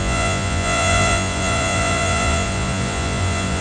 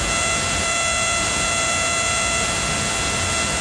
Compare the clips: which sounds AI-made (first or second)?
first